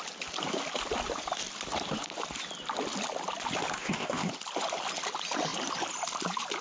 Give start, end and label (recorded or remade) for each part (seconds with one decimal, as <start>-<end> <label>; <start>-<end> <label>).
0.0-3.7 recorded; 3.7-4.3 remade; 4.3-6.6 recorded